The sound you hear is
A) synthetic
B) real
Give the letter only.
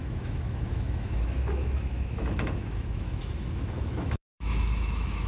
A